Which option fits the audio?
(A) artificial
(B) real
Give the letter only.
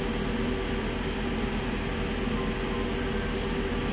B